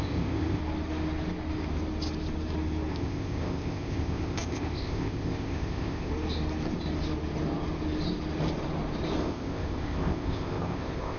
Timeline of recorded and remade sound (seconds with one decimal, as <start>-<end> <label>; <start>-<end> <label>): 0.0-0.6 remade; 0.6-2.9 recorded; 2.9-6.1 remade; 6.1-9.2 recorded; 9.2-11.2 remade